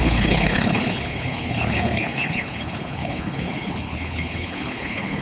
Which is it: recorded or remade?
remade